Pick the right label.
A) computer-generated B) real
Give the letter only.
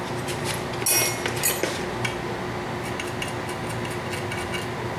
B